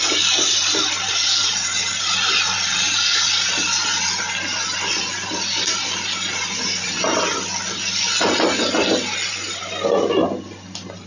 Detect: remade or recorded recorded